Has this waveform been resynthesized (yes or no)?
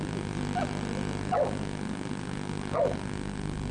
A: yes